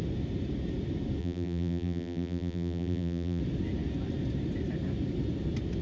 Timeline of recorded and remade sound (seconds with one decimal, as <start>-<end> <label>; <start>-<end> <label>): 0.0-1.2 recorded; 1.2-3.4 remade; 3.4-5.8 recorded